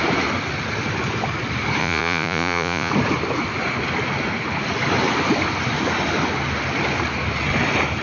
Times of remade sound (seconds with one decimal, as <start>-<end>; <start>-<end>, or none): 1.8-2.9

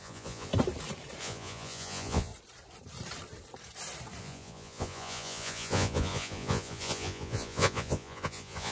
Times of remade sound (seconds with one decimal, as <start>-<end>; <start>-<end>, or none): 0.0-0.5; 1.2-2.3; 4.2-8.7

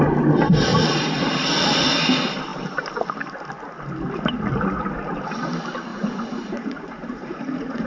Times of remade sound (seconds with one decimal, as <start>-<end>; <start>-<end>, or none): 0.7-1.3; 5.9-7.9

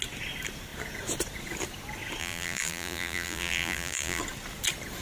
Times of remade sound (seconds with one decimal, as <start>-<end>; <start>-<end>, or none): 2.2-4.2

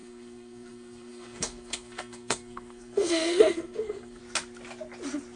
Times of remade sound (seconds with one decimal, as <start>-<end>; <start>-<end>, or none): 0.0-4.2

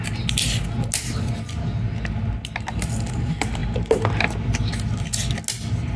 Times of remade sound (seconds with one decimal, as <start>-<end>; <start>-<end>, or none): none

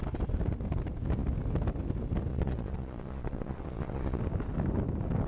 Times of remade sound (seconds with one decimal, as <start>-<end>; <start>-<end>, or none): 2.3-4.2